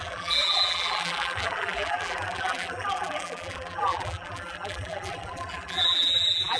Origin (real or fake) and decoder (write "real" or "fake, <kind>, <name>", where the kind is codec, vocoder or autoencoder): fake, vocoder, BigVGAN v2